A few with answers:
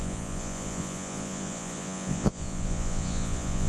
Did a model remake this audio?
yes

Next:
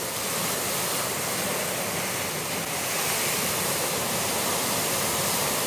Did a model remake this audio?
no